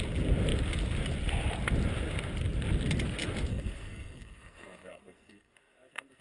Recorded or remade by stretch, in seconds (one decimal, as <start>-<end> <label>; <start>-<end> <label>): 0.0-3.5 recorded; 3.5-6.2 remade